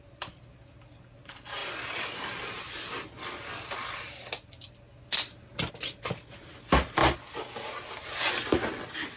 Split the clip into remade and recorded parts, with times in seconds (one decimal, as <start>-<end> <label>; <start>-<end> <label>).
0.0-9.2 recorded